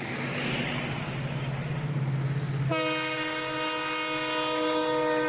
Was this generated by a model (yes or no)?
no